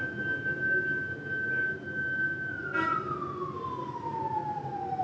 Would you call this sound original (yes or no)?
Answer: yes